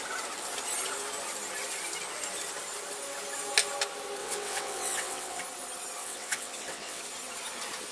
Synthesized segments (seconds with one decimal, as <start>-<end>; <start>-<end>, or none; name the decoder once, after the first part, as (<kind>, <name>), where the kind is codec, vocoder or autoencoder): 4.2-5.4 (vocoder, WaveNeXt); 6.0-7.0